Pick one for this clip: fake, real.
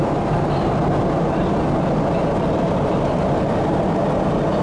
fake